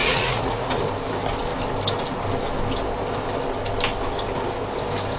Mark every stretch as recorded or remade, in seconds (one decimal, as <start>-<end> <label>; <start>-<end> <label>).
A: 0.0-0.8 remade; 0.8-5.2 recorded